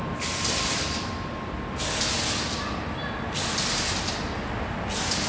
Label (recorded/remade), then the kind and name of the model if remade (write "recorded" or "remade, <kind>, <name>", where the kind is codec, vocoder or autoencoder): recorded